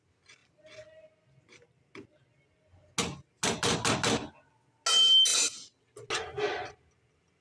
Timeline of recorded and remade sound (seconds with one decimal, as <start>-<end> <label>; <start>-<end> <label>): 0.0-7.4 recorded